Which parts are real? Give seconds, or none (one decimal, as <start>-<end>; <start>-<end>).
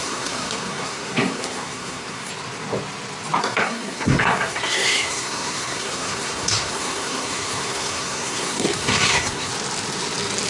2.3-3.4; 9.5-10.5